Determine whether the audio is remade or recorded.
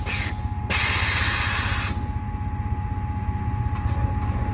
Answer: recorded